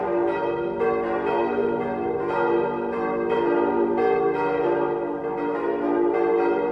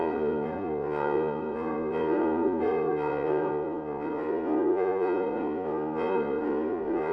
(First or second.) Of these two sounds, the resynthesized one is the second